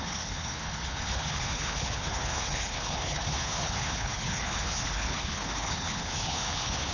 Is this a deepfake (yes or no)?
yes